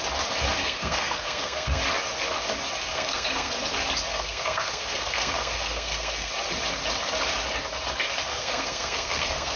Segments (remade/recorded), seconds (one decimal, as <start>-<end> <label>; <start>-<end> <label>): 0.0-0.6 recorded; 0.6-1.8 remade; 1.8-2.9 recorded; 2.9-3.5 remade; 3.5-4.1 recorded; 4.1-6.3 remade; 6.3-8.3 recorded; 8.3-9.6 remade